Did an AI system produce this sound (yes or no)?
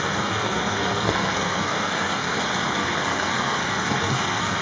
yes